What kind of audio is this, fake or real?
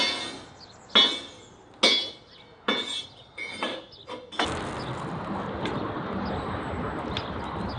real